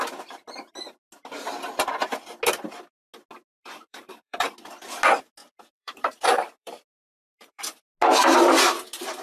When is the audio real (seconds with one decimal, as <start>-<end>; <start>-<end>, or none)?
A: 0.0-3.4; 4.5-5.4; 7.6-9.2